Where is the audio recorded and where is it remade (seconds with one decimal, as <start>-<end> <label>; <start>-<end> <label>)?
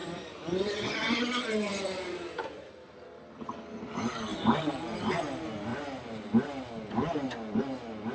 0.0-2.7 remade; 2.7-4.3 recorded; 4.3-5.1 remade; 5.1-8.1 recorded